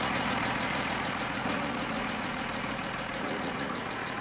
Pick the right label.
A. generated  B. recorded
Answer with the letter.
A